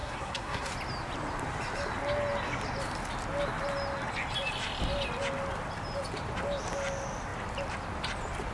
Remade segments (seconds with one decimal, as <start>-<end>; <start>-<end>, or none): 0.0-0.7